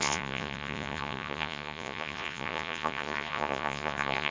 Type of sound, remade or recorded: remade